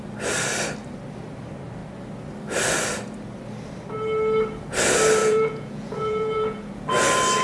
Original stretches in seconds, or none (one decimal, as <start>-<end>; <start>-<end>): 0.0-5.2; 6.7-7.4